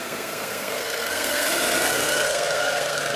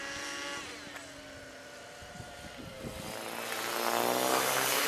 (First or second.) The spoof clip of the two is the first